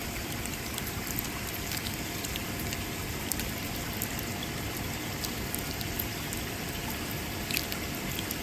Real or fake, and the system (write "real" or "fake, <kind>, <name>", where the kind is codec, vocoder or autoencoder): fake, vocoder, BigVGAN v2